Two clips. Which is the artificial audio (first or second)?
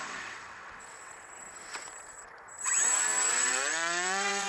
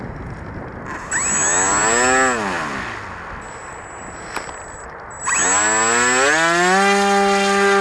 first